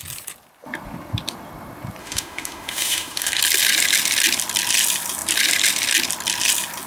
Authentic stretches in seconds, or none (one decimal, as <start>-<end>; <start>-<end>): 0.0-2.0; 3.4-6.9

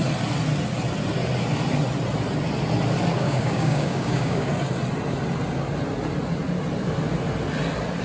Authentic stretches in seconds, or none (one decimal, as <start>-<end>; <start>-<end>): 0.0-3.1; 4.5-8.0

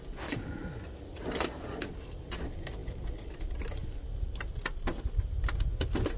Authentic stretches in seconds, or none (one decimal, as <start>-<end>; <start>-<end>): 0.0-6.2

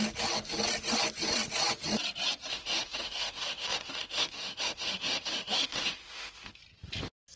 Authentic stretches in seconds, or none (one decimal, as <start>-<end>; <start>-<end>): 0.0-2.5; 6.6-7.4

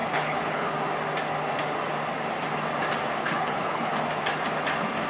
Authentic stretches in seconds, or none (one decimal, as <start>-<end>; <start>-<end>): 0.7-3.2; 3.9-5.1

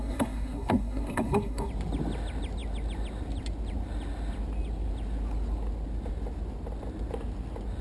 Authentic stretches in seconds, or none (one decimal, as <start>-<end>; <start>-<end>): 1.7-7.8